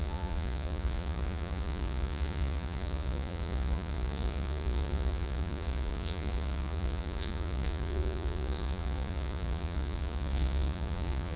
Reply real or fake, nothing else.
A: fake